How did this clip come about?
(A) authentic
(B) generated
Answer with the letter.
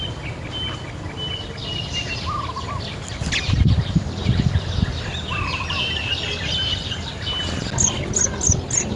A